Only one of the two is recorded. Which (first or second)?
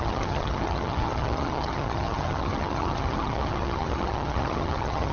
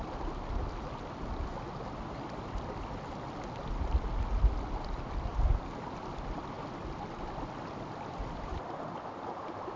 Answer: second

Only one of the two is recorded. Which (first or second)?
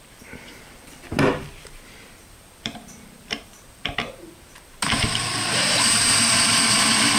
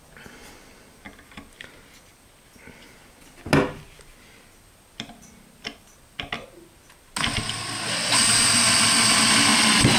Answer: second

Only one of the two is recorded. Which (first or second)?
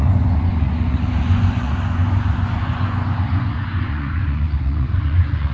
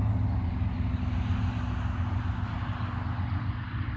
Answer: second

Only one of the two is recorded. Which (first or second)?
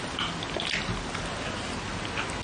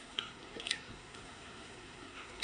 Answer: first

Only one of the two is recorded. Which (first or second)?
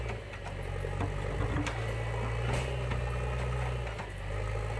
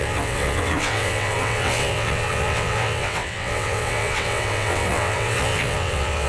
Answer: first